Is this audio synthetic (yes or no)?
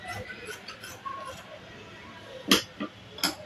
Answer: no